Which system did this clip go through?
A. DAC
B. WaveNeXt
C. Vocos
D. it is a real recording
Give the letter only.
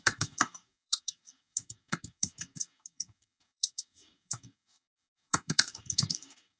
A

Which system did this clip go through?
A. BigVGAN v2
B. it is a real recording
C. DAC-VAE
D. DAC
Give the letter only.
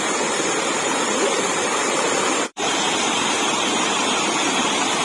A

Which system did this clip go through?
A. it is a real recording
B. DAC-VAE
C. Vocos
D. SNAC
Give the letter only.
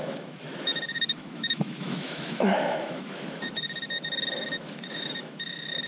B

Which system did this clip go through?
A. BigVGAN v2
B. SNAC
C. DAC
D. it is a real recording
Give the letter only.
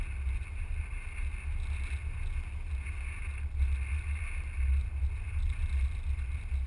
D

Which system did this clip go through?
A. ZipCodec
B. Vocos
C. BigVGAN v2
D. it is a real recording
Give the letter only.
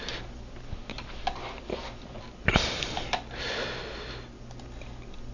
D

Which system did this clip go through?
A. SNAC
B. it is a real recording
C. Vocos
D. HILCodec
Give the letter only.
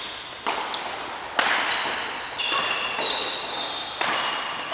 B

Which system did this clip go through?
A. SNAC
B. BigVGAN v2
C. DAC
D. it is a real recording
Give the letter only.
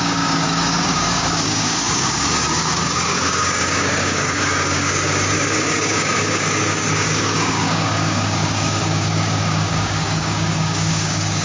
C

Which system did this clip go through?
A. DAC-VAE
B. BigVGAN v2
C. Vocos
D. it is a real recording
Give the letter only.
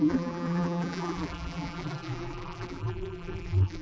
B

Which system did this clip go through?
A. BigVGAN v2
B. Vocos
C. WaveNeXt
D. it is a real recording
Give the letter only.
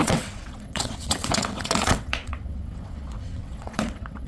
C